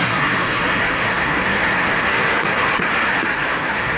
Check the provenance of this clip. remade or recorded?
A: remade